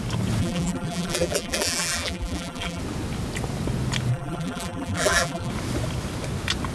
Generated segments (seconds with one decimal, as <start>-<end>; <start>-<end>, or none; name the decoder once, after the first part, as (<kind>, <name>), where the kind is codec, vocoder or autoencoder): 0.4-2.8 (vocoder, BigVGAN v2); 4.1-5.5